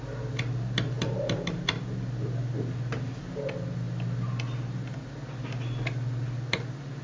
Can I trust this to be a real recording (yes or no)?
yes